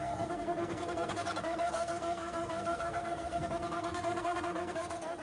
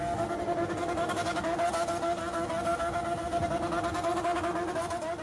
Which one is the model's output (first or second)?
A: first